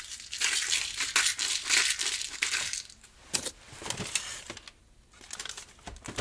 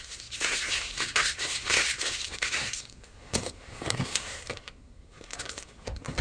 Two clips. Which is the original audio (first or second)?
first